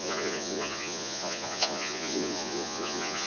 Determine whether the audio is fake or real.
fake